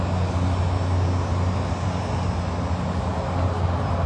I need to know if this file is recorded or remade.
recorded